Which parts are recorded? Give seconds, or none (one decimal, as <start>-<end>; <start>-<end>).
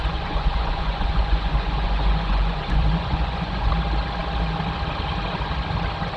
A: 3.7-6.2